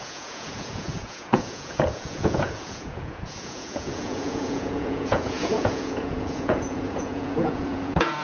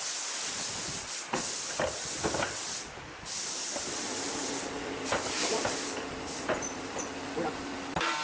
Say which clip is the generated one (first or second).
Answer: first